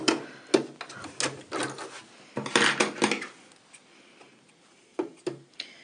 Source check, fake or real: real